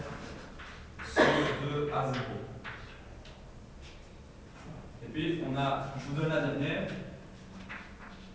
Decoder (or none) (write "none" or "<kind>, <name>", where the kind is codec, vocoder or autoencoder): none